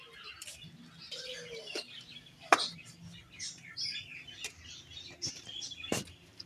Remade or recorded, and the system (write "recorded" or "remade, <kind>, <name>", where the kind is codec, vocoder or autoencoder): recorded